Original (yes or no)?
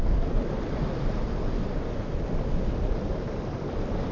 yes